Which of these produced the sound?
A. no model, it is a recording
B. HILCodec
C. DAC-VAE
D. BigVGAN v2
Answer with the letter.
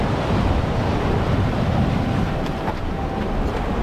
D